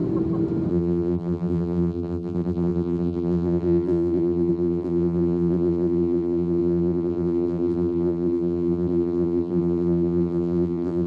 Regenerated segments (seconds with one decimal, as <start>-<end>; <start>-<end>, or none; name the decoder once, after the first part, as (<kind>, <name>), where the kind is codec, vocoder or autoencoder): 0.7-11.1 (vocoder, BigVGAN v2)